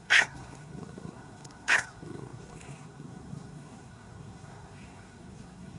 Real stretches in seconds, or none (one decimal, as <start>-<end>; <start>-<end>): none